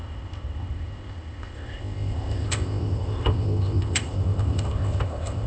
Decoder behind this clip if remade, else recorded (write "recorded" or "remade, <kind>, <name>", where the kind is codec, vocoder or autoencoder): remade, codec, ZipCodec